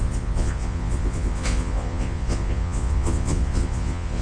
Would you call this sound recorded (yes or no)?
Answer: no